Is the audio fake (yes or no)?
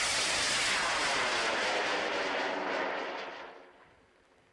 no